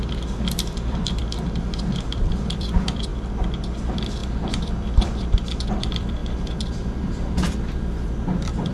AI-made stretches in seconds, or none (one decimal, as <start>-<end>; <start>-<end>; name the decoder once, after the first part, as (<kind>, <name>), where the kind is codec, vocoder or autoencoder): 0.0-1.2 (vocoder, BigVGAN v2); 2.1-3.1; 3.8-8.7